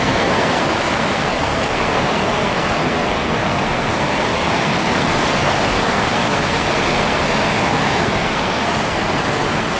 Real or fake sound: fake